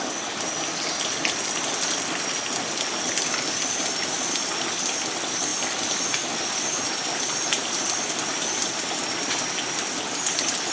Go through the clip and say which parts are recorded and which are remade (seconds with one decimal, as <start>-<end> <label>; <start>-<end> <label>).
0.0-10.7 recorded